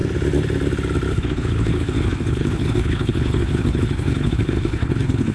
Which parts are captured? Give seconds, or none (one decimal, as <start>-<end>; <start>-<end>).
0.0-1.1